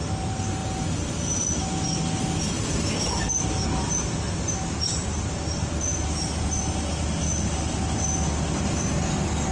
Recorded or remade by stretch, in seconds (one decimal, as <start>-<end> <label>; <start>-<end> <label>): 0.0-9.5 recorded